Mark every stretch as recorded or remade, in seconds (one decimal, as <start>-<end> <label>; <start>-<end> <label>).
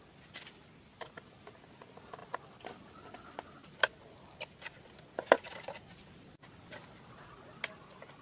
0.0-8.2 recorded